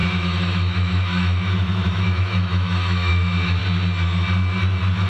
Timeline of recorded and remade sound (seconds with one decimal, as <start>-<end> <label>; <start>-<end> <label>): 0.0-3.6 remade; 3.6-5.1 recorded

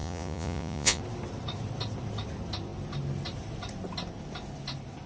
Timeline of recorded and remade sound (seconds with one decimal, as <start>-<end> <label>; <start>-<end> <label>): 0.0-1.0 remade; 1.0-5.1 recorded

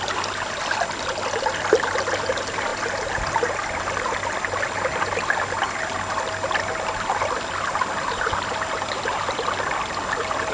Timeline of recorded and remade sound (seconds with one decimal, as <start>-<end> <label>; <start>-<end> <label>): 0.0-10.5 recorded

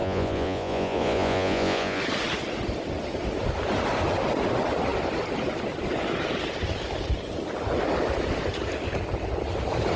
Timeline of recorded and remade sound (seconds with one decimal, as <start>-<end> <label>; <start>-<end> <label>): 0.0-2.0 remade; 2.0-10.0 recorded